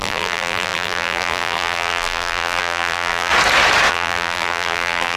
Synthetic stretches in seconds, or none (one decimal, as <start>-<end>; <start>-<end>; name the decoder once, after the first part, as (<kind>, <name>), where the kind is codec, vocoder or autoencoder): 0.0-3.3 (vocoder, BigVGAN v2); 3.9-5.2